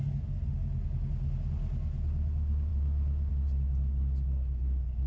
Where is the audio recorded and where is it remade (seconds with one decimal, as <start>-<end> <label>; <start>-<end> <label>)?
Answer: 0.0-5.1 recorded